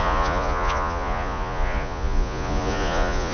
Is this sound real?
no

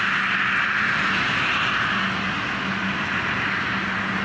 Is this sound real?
yes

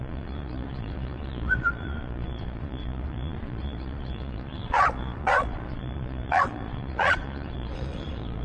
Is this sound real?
no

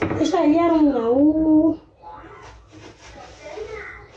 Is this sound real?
yes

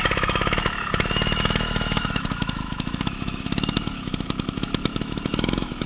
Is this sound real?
no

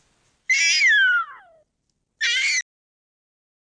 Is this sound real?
yes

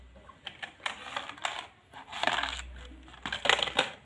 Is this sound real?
yes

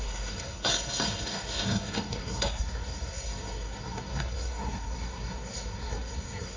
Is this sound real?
no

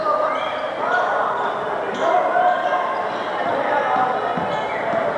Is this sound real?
yes